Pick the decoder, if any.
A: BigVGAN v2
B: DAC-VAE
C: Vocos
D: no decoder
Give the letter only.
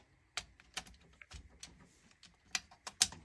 D